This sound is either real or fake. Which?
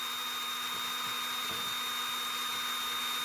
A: real